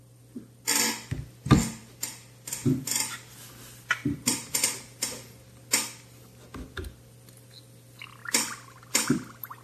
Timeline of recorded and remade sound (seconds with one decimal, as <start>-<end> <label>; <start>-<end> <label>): 0.0-9.6 recorded